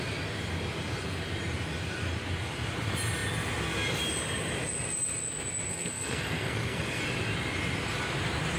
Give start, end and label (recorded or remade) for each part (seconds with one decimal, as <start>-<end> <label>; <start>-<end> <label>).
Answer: 0.0-5.7 recorded; 5.7-7.0 remade; 7.0-8.6 recorded